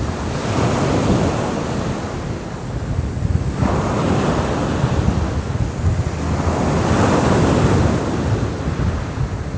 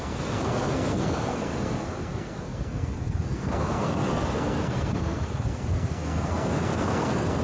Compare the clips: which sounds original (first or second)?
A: first